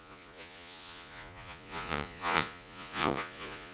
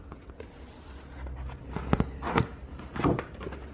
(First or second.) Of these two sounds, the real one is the second